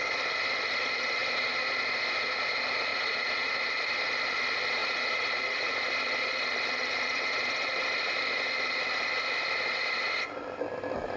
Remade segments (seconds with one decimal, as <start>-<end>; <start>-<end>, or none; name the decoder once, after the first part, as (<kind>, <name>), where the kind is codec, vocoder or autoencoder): 2.9-3.6 (vocoder, Vocos); 4.8-5.8